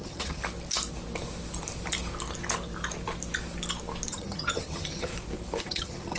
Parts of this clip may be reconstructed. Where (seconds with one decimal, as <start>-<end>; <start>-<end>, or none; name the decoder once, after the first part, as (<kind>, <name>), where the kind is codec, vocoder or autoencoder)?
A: 0.0-0.4 (vocoder, HiFi-GAN); 4.1-5.1; 5.6-6.2